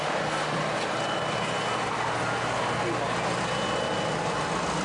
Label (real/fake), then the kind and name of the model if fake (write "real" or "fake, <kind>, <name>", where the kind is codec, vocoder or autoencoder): real